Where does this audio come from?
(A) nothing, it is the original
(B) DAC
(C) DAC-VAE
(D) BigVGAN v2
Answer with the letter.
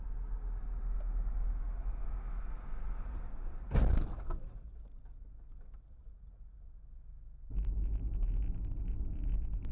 A